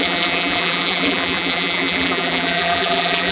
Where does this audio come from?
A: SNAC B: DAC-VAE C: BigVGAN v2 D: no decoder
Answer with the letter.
C